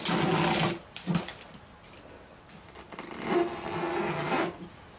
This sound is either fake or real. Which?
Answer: real